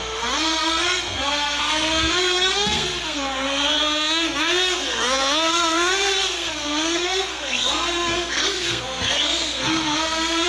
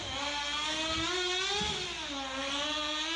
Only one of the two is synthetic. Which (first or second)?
first